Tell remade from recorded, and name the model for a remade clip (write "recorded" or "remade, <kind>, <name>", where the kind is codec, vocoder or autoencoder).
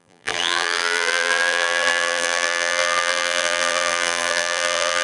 remade, vocoder, BigVGAN v2